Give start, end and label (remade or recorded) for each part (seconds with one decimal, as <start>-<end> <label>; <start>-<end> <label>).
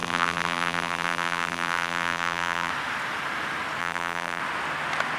0.0-2.7 remade; 2.7-3.8 recorded; 3.8-4.4 remade; 4.4-5.2 recorded